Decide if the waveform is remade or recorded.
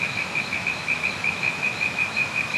remade